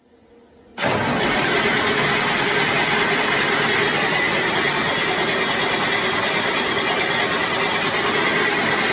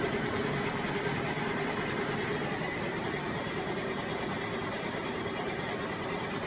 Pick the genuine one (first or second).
first